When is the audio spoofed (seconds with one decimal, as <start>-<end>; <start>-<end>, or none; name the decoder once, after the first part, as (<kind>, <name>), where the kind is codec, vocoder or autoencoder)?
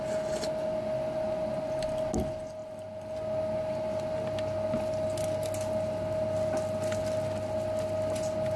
none